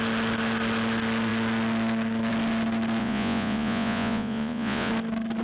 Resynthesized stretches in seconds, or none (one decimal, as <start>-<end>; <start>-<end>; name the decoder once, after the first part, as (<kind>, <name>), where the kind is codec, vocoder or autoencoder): 3.0-4.9 (vocoder, Vocos)